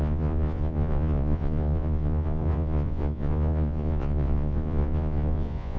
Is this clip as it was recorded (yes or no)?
no